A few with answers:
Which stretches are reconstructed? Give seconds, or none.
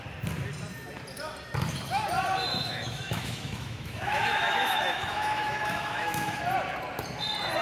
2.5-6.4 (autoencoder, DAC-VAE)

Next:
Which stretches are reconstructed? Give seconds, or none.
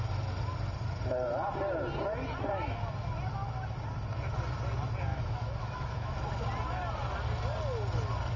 5.1-6.3 (autoencoder, DAC-VAE)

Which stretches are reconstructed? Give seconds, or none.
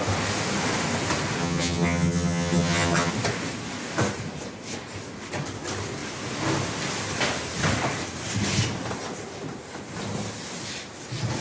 1.4-3.1 (vocoder, HiFi-GAN)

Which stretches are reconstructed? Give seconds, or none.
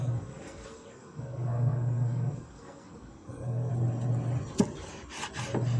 0.0-3.7 (codec, SNAC)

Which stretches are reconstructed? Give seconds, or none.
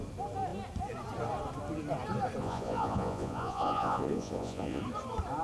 2.4-4.8 (vocoder, Vocos)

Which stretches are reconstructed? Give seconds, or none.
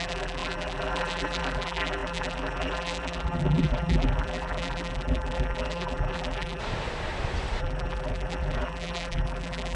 0.0-6.6 (vocoder, BigVGAN v2); 7.6-9.8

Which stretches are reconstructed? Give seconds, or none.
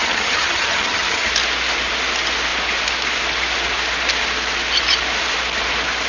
0.0-1.3 (vocoder, HiFi-GAN)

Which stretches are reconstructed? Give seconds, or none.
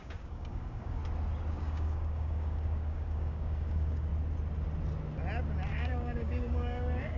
0.0-1.0 (codec, DAC); 1.5-4.1; 5.7-7.2